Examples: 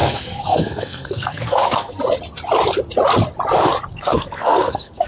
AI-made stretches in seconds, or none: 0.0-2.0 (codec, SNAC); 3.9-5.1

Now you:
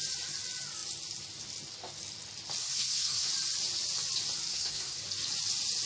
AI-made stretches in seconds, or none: 2.6-3.3 (codec, SNAC); 4.5-5.0

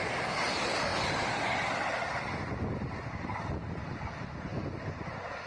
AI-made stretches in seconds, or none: none

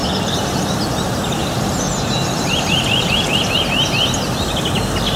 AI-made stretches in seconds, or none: 0.0-0.6 (vocoder, BigVGAN v2); 1.4-3.5

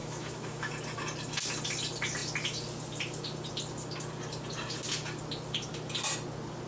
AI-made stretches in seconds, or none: 0.0-0.7 (autoencoder, DAC-VAE)

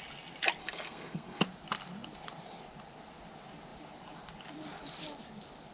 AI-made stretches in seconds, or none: 0.6-1.4 (codec, SNAC)

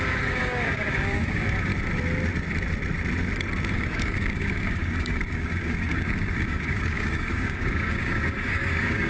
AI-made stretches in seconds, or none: 0.0-1.7 (codec, DAC); 3.7-9.1